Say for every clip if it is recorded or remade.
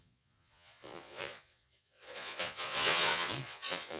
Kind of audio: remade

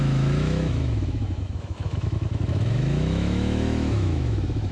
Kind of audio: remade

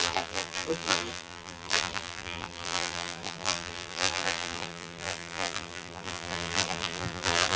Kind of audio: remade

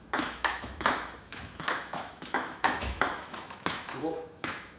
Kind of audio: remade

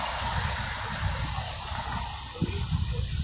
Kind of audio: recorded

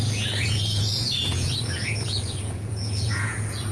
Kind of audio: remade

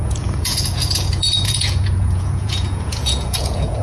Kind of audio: remade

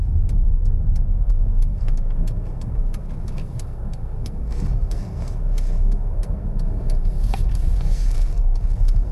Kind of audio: remade